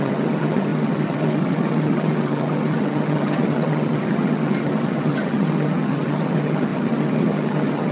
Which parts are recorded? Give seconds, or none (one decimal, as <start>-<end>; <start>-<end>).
none